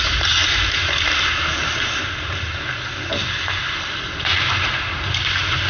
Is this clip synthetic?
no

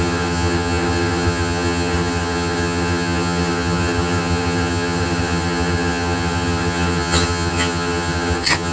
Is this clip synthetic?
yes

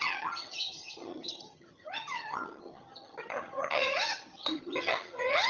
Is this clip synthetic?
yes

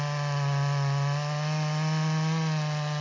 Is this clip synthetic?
no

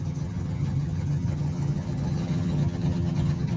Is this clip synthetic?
yes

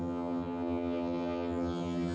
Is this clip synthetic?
yes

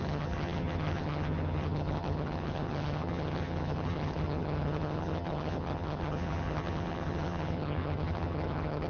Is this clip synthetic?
yes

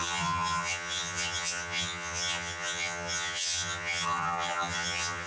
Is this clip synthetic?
yes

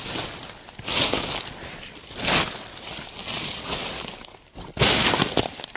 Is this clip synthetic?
no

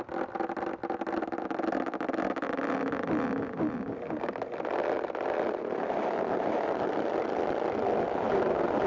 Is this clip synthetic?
no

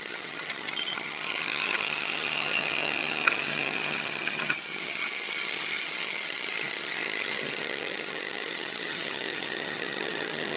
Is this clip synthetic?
yes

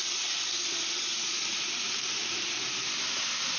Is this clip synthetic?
no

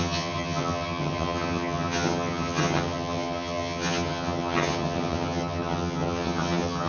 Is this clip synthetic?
yes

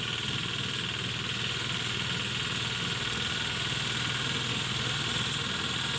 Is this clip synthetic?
no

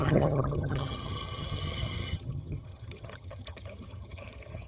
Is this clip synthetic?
yes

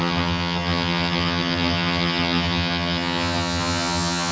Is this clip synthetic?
yes